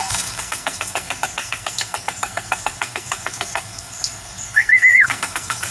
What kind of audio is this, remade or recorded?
remade